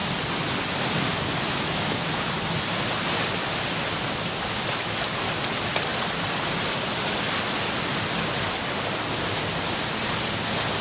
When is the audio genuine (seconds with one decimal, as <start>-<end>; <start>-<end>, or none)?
0.0-10.8